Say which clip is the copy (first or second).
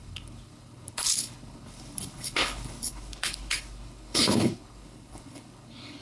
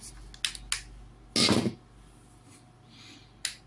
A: first